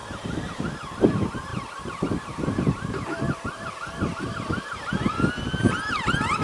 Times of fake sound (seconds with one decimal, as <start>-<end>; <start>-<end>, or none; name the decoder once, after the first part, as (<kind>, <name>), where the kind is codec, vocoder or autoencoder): 0.0-0.7 (vocoder, BigVGAN v2); 1.5-5.3